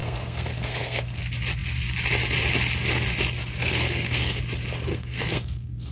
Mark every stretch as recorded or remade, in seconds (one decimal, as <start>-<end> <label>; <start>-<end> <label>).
0.0-1.2 remade; 1.2-3.6 recorded; 3.6-4.4 remade; 4.4-4.9 recorded; 4.9-5.9 remade